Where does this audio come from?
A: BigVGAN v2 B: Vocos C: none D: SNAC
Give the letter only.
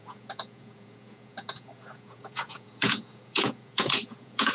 B